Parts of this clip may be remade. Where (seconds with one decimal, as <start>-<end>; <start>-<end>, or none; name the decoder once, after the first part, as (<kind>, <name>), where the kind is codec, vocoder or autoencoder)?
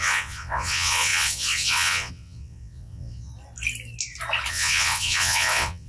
0.0-3.3 (vocoder, WaveNeXt); 4.5-5.9